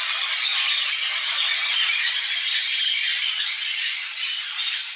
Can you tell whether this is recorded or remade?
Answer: remade